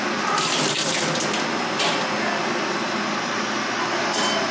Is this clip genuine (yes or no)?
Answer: yes